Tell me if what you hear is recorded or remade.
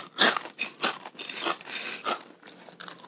recorded